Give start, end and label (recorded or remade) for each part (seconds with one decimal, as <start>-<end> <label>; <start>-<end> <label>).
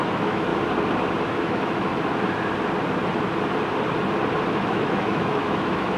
0.0-0.5 remade; 0.5-1.2 recorded; 1.2-1.9 remade; 1.9-4.5 recorded; 4.5-6.0 remade